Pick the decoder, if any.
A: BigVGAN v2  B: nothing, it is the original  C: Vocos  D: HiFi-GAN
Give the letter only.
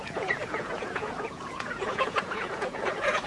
C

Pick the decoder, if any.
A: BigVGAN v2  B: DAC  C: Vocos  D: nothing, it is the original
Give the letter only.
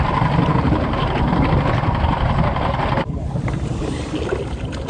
D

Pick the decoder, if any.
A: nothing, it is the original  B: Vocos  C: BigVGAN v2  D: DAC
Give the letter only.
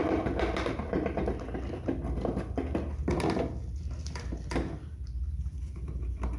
A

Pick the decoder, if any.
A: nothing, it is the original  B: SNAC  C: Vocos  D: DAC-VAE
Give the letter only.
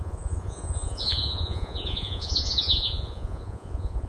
C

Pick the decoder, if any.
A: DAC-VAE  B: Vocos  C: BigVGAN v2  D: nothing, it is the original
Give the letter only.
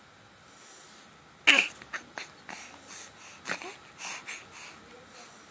D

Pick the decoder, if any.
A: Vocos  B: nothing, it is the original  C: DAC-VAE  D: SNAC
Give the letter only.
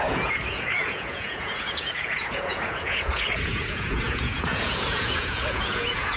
A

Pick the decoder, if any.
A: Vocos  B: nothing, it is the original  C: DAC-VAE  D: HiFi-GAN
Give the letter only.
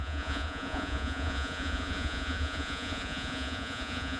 A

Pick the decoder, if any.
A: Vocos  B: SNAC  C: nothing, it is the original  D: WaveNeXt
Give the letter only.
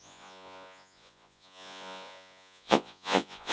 A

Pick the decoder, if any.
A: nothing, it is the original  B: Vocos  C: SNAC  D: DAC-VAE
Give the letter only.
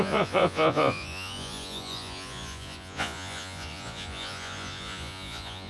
B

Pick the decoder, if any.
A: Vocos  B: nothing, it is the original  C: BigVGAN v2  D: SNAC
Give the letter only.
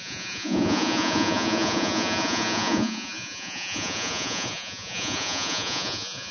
A